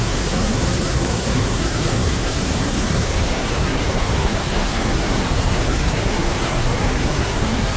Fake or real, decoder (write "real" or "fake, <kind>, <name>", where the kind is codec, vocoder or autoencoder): fake, codec, SNAC